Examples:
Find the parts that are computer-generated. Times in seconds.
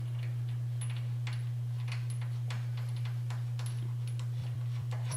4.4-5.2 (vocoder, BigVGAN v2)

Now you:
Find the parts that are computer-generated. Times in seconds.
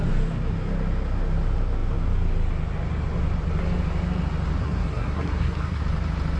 4.6-5.8 (codec, SNAC)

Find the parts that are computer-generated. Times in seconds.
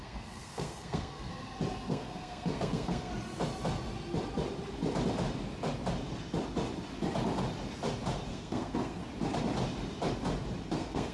0.0-1.3 (codec, SNAC); 1.9-3.1; 8.3-9.0; 10.7-11.1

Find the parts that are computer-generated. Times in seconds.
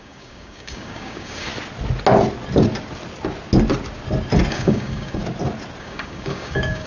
0.0-1.5 (codec, DAC); 4.5-5.2; 5.8-6.9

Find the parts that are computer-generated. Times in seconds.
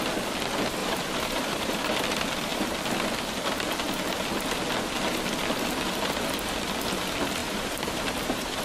0.8-2.0 (vocoder, BigVGAN v2); 7.4-8.6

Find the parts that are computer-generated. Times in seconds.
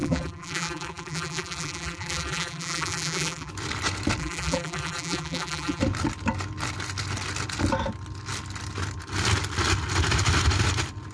0.0-3.5 (vocoder, BigVGAN v2); 4.2-5.8